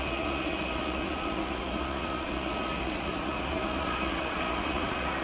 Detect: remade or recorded remade